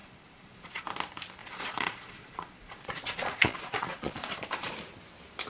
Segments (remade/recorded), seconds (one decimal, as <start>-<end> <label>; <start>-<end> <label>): 0.0-0.8 remade; 0.8-1.4 recorded; 1.4-4.7 remade; 4.7-5.5 recorded